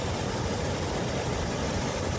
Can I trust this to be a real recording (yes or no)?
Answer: yes